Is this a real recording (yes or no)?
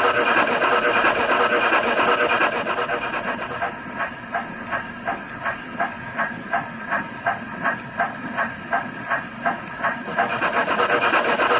yes